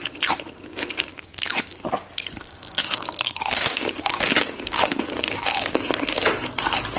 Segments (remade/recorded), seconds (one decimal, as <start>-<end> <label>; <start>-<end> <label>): 0.0-1.1 recorded; 1.1-1.8 remade; 1.8-2.4 recorded; 2.4-6.6 remade; 6.6-7.0 recorded